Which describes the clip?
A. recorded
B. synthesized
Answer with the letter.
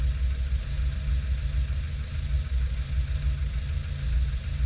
A